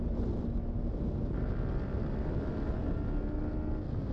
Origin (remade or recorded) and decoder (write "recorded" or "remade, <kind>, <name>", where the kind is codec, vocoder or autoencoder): recorded